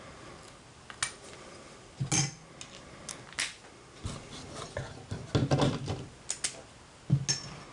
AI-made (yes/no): no